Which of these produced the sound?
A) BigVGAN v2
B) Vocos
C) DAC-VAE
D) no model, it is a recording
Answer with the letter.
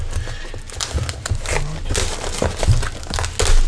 D